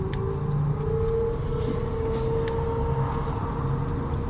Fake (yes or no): no